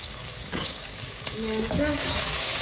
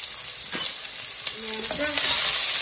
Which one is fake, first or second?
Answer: first